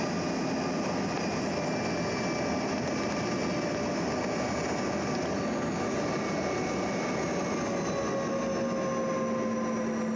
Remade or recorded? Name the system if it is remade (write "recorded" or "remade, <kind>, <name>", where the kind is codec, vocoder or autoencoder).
recorded